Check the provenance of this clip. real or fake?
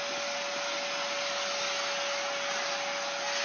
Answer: real